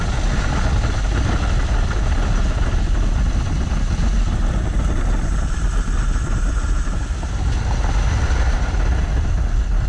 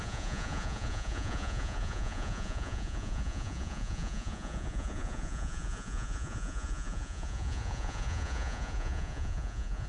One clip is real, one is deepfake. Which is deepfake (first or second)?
second